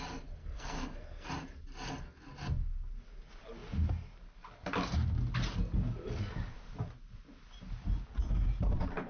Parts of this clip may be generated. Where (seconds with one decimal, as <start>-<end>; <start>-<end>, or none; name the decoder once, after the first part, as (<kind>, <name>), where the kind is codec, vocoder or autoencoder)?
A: 0.4-1.3 (codec, SNAC)